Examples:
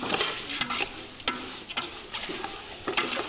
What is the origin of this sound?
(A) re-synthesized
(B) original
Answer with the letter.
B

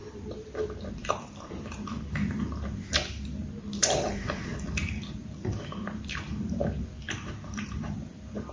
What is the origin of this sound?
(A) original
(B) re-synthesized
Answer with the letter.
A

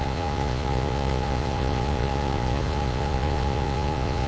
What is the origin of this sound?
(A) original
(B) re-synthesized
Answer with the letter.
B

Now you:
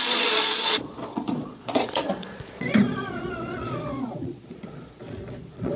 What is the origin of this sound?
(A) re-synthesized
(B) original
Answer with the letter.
A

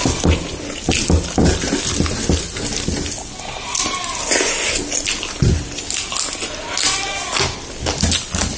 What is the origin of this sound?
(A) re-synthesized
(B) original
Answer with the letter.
B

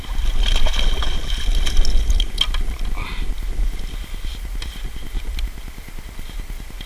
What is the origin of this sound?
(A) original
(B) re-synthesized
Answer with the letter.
A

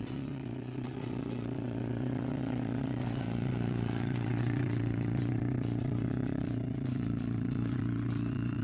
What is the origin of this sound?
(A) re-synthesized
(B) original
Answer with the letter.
A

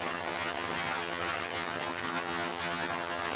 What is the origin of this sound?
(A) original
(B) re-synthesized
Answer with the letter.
B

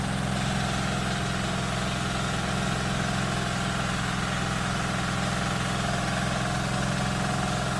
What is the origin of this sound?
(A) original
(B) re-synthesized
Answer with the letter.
A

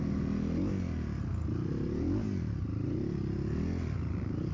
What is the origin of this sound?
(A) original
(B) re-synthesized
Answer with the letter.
A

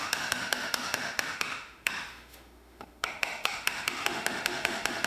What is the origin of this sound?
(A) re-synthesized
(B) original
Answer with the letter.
A